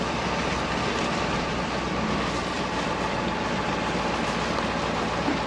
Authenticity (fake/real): real